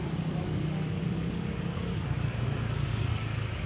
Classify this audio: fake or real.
fake